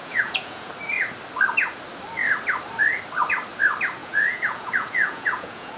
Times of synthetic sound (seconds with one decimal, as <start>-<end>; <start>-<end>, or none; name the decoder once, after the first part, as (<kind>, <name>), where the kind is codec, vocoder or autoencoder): 0.0-0.7 (vocoder, Vocos); 4.0-5.8